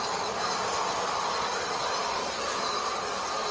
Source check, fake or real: real